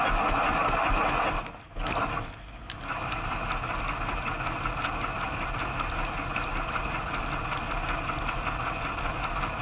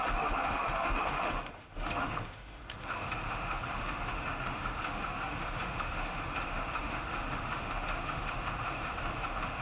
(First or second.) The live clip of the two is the first